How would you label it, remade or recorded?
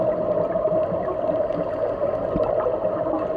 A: recorded